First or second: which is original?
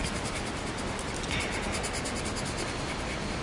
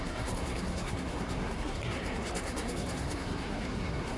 first